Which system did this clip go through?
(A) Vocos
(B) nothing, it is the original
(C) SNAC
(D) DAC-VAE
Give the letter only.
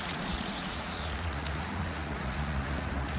A